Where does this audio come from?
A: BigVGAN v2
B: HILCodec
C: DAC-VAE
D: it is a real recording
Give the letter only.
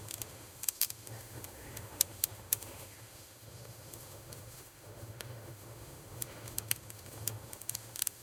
C